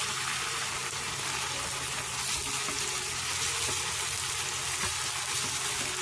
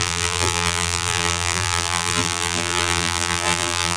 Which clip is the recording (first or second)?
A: first